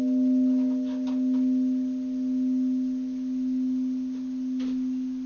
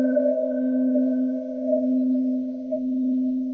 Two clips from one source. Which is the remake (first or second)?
second